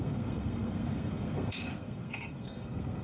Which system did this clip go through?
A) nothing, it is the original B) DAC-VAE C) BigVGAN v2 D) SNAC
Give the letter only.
D